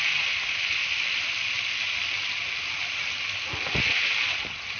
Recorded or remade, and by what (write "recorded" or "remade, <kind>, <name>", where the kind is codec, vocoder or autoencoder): recorded